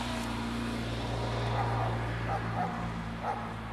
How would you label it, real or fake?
real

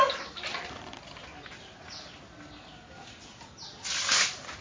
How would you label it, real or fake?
real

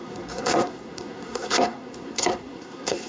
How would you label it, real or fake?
fake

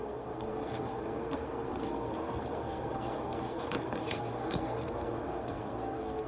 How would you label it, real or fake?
fake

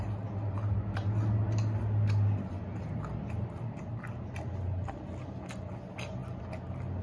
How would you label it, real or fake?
real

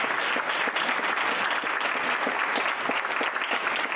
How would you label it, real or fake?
real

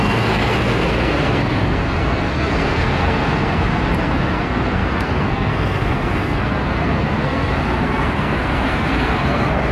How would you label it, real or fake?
fake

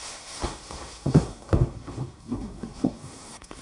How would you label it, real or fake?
fake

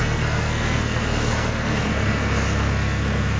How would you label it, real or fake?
fake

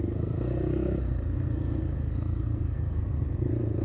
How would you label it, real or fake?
fake